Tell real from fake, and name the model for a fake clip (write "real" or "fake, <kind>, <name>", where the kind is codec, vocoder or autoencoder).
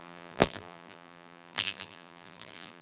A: fake, vocoder, BigVGAN v2